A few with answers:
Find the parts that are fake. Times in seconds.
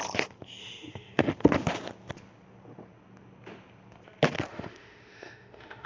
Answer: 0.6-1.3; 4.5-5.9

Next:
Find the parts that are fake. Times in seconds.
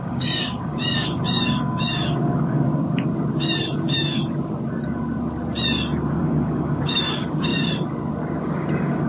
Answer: 0.0-2.7; 3.6-4.2; 6.1-7.5; 8.4-9.1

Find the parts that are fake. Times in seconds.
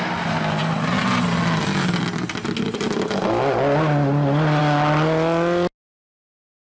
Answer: none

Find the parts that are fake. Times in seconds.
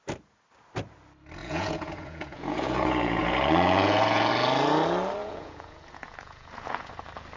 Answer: 1.4-4.3; 5.2-6.9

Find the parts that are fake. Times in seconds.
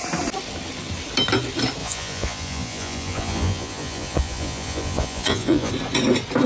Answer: 1.8-5.7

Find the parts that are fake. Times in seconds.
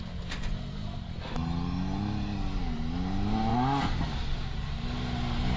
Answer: none